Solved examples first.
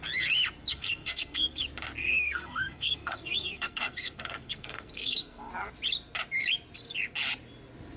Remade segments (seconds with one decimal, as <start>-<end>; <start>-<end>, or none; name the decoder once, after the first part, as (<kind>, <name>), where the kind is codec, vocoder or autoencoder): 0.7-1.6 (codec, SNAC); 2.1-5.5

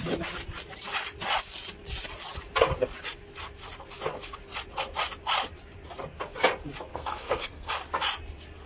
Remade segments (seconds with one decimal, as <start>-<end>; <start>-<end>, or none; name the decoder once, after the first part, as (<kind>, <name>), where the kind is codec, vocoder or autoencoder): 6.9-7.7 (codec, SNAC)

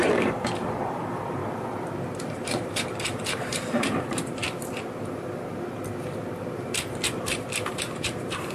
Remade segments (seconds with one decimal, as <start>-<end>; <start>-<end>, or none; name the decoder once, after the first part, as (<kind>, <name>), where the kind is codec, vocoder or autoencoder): 0.0-1.4 (vocoder, BigVGAN v2); 2.2-4.4; 7.7-8.5

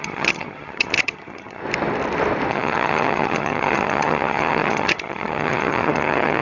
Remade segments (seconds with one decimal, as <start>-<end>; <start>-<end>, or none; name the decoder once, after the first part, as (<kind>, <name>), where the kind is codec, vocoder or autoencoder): 0.0-1.6 (vocoder, HiFi-GAN); 2.5-6.4